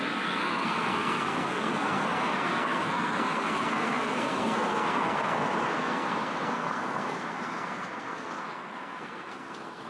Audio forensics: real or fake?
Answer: fake